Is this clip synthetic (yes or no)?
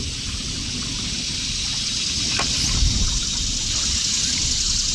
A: no